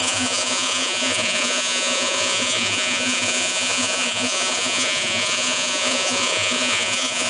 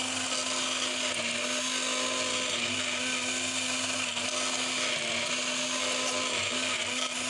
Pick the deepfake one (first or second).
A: first